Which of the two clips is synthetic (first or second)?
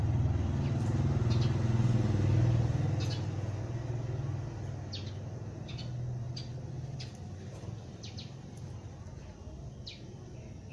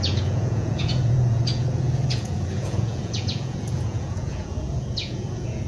second